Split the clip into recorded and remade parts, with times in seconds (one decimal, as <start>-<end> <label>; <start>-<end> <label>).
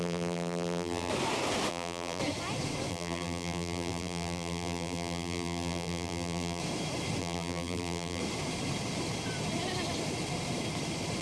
0.0-1.1 remade; 1.1-1.7 recorded; 1.7-2.2 remade; 2.2-2.9 recorded; 2.9-6.6 remade; 6.6-7.2 recorded; 7.2-8.2 remade; 8.2-11.2 recorded